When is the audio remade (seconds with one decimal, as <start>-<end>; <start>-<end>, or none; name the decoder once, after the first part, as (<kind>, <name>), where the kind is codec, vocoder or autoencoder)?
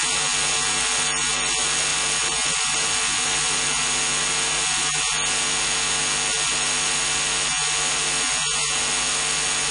none